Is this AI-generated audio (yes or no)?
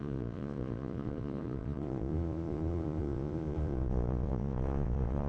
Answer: yes